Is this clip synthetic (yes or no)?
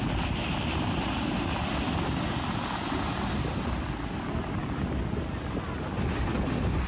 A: no